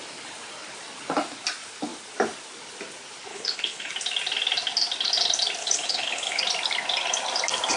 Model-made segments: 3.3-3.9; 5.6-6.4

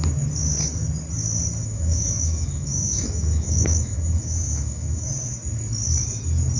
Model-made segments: 1.6-5.1

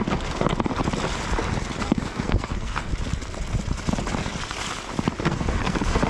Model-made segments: 0.0-0.7; 1.8-2.9; 5.2-6.1

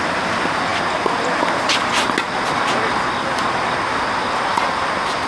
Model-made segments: none

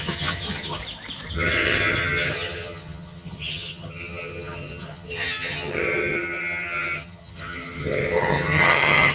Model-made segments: 0.0-0.8; 1.3-9.1

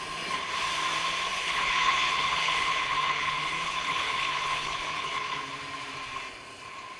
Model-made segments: 1.3-5.5

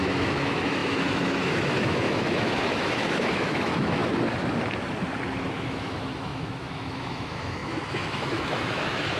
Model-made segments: 0.0-4.0; 5.5-9.2

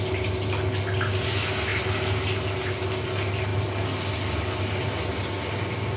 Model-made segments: none